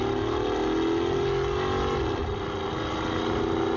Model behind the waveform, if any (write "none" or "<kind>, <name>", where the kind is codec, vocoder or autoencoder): none